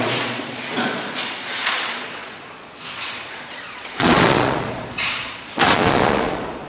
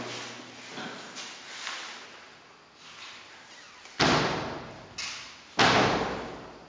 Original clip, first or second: second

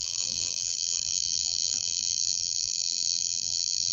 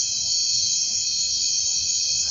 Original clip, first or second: second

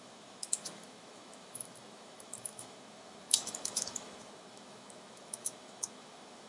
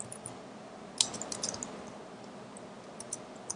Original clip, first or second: second